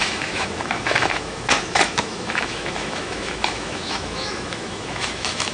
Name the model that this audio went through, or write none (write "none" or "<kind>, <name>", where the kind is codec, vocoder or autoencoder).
autoencoder, DAC-VAE